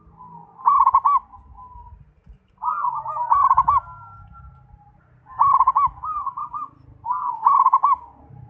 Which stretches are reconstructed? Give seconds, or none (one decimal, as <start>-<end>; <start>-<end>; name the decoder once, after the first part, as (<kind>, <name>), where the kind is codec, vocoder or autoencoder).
none